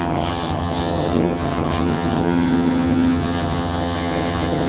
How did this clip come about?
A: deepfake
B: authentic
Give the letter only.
A